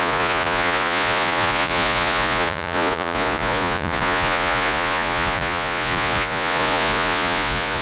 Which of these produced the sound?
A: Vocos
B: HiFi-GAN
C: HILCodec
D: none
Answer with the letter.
A